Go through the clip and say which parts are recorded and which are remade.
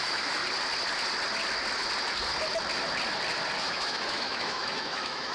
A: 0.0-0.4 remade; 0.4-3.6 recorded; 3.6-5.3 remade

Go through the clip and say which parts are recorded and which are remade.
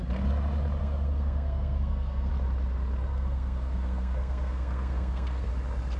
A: 0.0-0.8 recorded; 0.8-2.3 remade; 2.3-3.1 recorded; 3.1-5.5 remade; 5.5-6.0 recorded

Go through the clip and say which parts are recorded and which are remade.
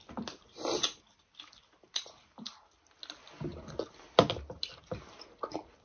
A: 0.0-5.8 recorded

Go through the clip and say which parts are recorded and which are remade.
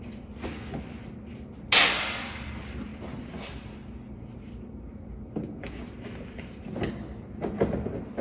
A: 0.0-8.2 recorded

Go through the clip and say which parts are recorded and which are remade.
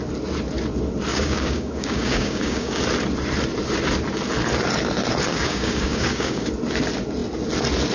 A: 0.0-1.1 recorded; 1.1-2.8 remade; 2.8-5.3 recorded; 5.3-6.5 remade; 6.5-7.9 recorded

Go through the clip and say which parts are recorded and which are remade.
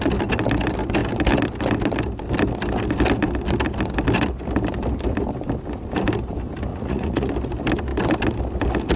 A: 0.0-6.7 recorded; 6.7-7.3 remade; 7.3-9.0 recorded